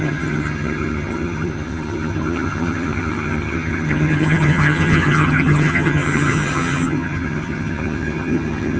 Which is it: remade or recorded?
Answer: remade